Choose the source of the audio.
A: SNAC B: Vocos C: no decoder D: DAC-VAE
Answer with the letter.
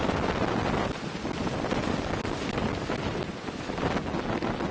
C